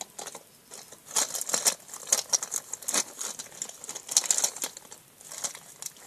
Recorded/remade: recorded